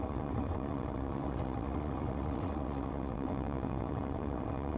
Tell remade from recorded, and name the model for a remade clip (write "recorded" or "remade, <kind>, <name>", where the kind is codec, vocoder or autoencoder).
remade, vocoder, WaveNeXt